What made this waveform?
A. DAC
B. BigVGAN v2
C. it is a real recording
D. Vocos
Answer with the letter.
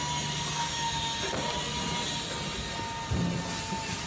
C